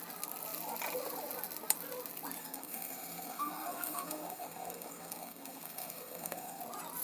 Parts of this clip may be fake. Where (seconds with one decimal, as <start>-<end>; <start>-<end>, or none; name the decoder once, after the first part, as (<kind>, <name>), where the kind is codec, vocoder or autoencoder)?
2.4-6.6 (codec, SNAC)